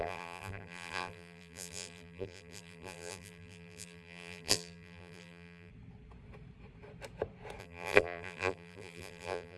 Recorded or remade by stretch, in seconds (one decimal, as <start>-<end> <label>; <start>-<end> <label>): 0.0-5.7 remade; 5.7-7.6 recorded; 7.6-9.6 remade